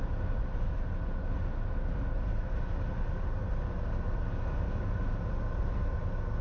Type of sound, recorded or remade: recorded